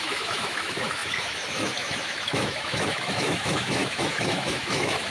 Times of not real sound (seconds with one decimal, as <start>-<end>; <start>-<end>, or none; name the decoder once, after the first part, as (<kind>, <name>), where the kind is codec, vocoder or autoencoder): 0.0-5.1 (autoencoder, DAC-VAE)